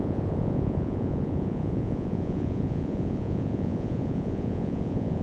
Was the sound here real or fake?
fake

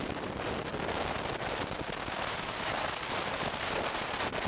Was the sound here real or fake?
real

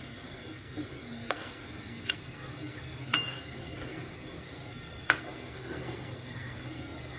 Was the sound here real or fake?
fake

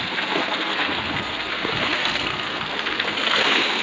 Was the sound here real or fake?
fake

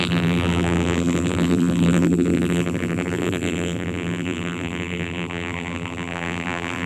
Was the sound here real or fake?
fake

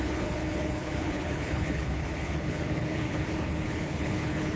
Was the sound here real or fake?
fake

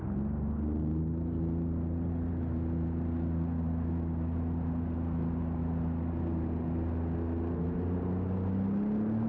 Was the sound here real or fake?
real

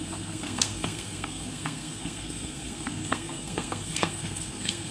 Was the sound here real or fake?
fake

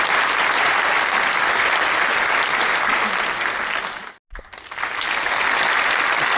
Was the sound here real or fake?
real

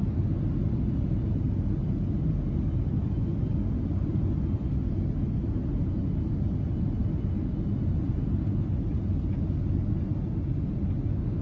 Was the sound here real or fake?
real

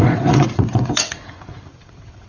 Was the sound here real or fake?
fake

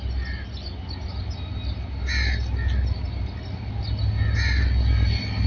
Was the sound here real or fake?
real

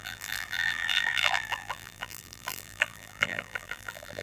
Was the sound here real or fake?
fake